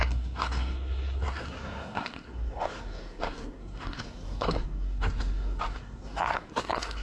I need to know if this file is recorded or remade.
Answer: remade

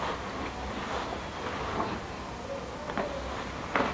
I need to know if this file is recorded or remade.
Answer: recorded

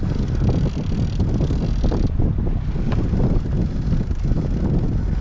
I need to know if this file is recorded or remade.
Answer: recorded